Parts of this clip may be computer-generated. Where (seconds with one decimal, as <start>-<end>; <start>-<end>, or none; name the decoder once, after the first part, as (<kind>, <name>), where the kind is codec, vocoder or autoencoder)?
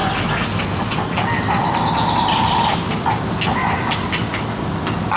none